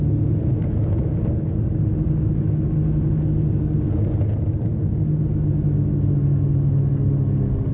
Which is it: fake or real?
real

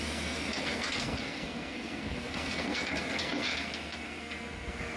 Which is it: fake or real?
fake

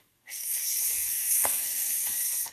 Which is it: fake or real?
fake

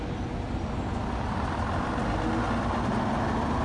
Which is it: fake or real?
real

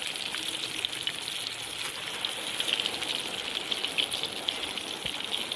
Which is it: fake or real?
real